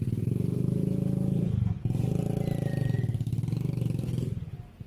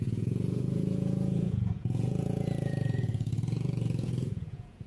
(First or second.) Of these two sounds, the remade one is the second